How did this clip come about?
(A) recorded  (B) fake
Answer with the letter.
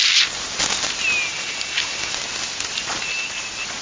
A